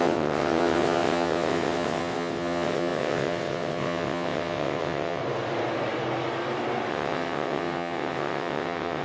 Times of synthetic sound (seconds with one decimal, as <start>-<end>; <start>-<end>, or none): 0.0-5.2; 6.9-9.0